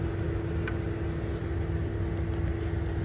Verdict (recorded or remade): recorded